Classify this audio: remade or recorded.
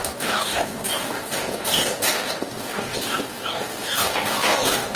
remade